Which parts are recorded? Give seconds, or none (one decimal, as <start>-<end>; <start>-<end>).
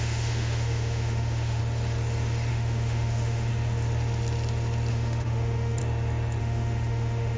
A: 1.6-2.5; 3.5-4.9; 5.8-6.4